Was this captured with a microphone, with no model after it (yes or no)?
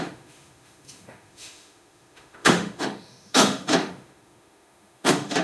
no